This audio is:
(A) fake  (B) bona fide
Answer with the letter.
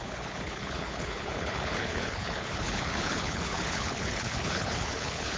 A